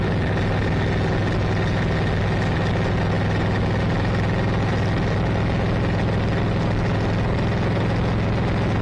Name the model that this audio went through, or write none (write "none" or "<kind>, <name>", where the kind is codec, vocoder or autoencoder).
none